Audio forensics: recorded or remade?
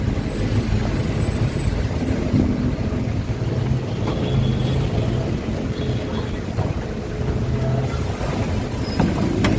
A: recorded